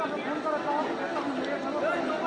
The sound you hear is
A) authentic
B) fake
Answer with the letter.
A